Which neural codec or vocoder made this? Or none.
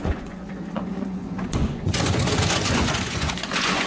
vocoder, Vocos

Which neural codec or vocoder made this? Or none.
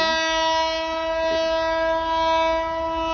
none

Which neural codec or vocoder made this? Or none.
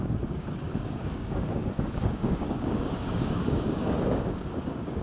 codec, DAC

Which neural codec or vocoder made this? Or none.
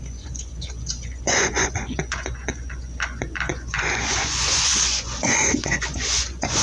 vocoder, Vocos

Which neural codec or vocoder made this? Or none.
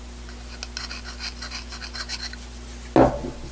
none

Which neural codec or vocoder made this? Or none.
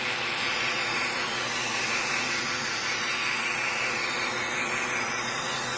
vocoder, BigVGAN v2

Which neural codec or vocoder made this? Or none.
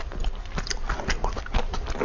none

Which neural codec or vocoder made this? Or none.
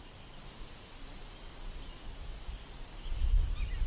none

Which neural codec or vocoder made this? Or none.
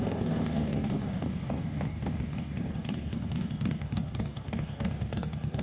codec, DAC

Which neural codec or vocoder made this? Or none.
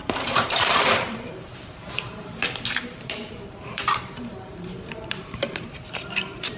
vocoder, BigVGAN v2